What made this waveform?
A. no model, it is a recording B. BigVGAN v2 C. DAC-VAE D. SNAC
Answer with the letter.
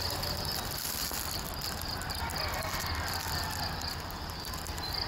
A